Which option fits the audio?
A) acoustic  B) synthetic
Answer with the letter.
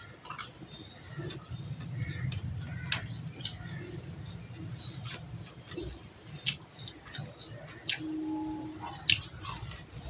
A